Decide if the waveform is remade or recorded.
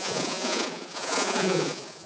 remade